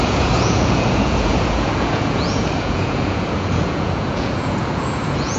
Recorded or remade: remade